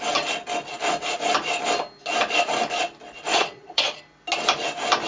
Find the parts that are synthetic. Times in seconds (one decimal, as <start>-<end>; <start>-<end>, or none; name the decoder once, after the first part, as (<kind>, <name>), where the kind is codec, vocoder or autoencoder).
3.3-4.0 (vocoder, Vocos)